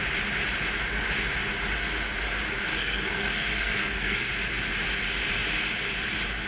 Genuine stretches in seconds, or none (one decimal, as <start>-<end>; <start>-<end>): 0.0-2.7; 4.3-6.5